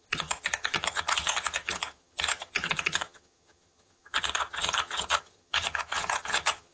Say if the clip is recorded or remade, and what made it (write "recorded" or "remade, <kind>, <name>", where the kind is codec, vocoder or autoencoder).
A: remade, vocoder, HiFi-GAN